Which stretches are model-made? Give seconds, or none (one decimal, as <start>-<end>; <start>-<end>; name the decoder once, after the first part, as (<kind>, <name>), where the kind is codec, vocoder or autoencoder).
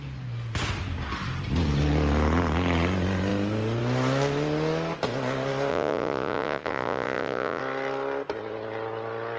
5.7-7.6 (vocoder, Vocos)